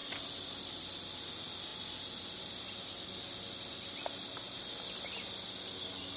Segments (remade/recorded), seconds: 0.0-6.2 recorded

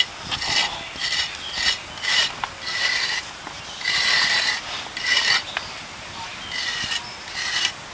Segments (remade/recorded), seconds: 0.0-0.6 recorded; 0.6-1.5 remade; 1.5-5.5 recorded; 5.5-6.3 remade; 6.3-7.9 recorded

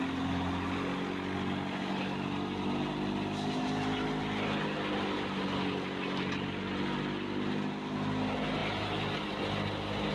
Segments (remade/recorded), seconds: 0.0-10.1 recorded

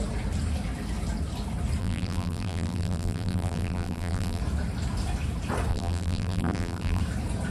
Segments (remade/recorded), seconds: 0.0-1.8 recorded; 1.8-4.4 remade; 4.4-5.7 recorded; 5.7-7.0 remade; 7.0-7.5 recorded

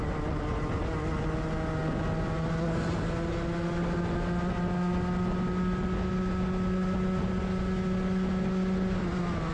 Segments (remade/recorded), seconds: 0.0-9.5 recorded

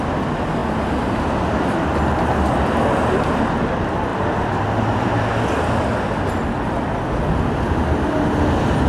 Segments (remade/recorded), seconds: 0.0-4.1 recorded; 4.1-5.1 remade; 5.1-8.9 recorded